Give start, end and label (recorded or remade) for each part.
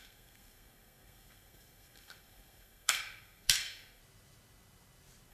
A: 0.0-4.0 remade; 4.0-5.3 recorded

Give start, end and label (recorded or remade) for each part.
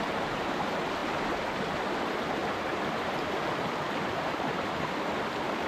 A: 0.0-2.4 recorded; 2.4-5.0 remade; 5.0-5.7 recorded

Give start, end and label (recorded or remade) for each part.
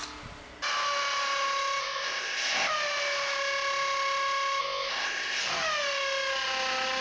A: 0.0-1.8 recorded; 1.8-2.7 remade; 2.7-4.6 recorded; 4.6-5.4 remade; 5.4-7.0 recorded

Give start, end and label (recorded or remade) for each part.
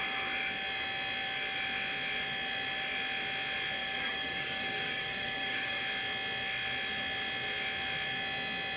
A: 0.0-3.8 recorded; 3.8-5.8 remade; 5.8-8.8 recorded